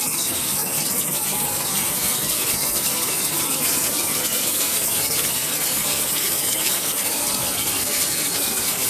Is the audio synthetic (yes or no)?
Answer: yes